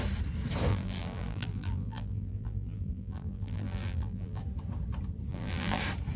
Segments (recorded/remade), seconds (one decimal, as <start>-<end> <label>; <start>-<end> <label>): 0.0-0.7 recorded; 0.7-4.4 remade; 4.4-5.3 recorded; 5.3-5.8 remade; 5.8-6.2 recorded